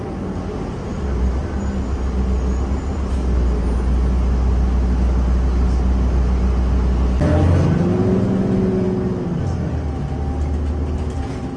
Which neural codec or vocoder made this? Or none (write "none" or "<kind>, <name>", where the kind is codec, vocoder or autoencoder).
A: none